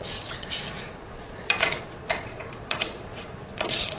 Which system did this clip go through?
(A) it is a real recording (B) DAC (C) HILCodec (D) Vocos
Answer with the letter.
D